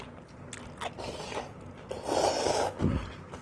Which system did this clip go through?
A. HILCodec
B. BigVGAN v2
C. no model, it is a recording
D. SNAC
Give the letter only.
C